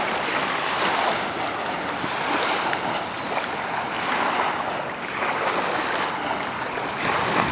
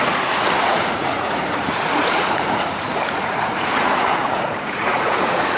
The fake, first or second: second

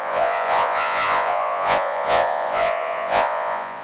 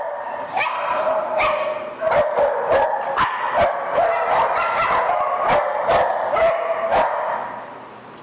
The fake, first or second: first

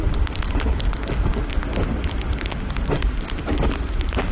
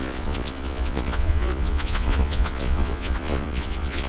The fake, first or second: second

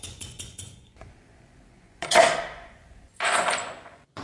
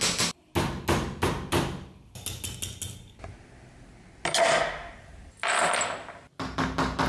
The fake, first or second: first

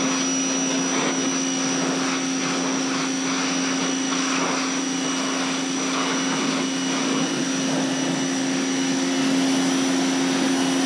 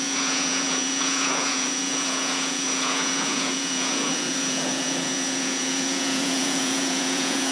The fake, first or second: second